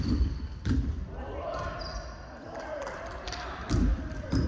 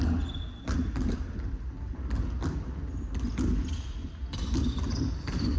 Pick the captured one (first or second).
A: second